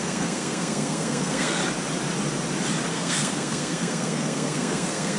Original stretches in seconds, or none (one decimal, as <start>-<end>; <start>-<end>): 1.6-2.9